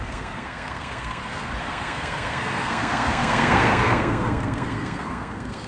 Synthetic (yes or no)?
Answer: yes